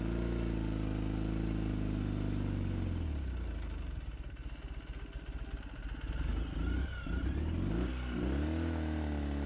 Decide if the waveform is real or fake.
real